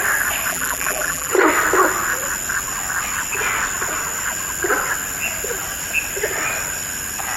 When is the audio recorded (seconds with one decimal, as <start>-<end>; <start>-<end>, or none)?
0.0-0.5; 1.3-7.4